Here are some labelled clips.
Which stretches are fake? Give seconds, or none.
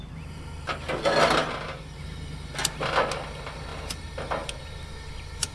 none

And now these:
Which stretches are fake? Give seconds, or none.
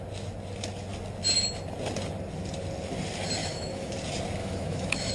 3.4-3.9; 4.4-5.1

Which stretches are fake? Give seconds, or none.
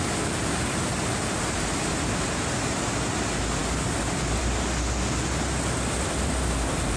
none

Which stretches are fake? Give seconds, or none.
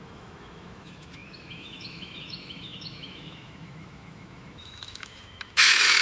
0.0-6.0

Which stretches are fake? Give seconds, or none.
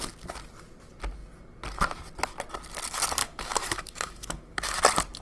3.2-4.8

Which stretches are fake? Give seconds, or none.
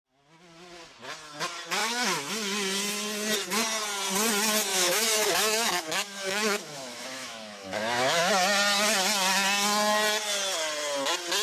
1.8-2.3; 4.7-8.3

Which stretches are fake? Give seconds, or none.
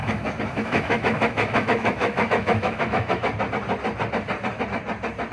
0.0-3.2